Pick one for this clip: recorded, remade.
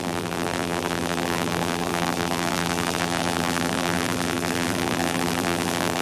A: remade